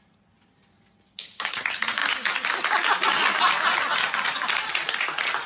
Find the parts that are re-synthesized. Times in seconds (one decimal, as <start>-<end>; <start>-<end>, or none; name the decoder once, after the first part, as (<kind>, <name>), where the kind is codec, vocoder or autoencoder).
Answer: 1.1-1.6 (codec, HILCodec)